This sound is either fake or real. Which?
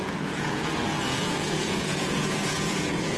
fake